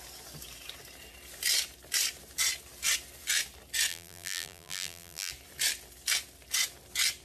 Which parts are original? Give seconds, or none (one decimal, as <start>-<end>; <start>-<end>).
0.0-3.9; 5.3-7.2